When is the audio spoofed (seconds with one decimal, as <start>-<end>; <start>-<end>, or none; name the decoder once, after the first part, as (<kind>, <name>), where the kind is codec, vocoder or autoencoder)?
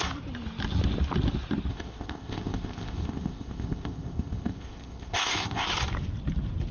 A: 1.7-5.7 (codec, ZipCodec)